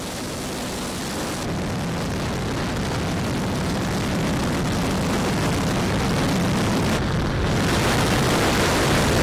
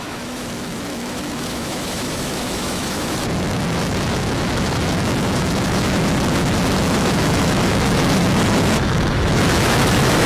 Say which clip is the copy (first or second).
second